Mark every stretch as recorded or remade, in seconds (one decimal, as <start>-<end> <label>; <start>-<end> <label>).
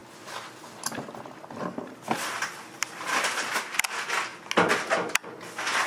0.0-3.5 remade; 3.5-5.9 recorded